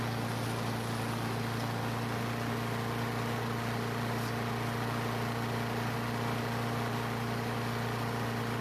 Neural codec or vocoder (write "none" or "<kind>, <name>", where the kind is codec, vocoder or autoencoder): none